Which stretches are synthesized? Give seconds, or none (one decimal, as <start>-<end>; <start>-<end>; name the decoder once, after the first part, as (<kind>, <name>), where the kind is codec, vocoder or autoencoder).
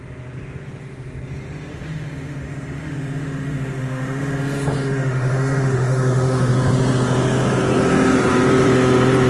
1.7-6.5 (autoencoder, DAC-VAE)